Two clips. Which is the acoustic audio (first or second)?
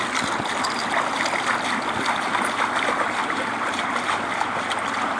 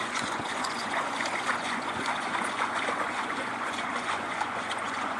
first